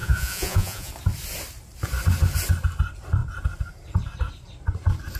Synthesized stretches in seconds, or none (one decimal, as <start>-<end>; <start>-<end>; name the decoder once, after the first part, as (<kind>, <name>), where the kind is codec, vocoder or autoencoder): 0.0-0.9 (vocoder, Vocos)